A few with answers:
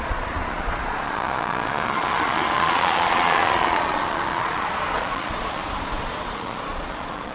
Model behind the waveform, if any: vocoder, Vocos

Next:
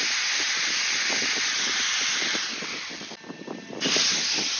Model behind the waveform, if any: none